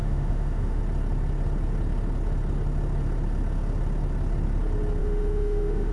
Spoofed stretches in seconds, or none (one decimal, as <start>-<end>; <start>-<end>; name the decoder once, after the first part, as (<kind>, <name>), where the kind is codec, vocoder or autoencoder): 0.0-0.8 (autoencoder, DAC-VAE); 5.0-5.9